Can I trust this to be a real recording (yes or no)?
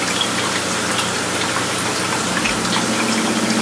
yes